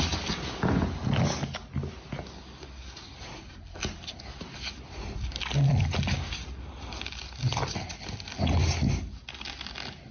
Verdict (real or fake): real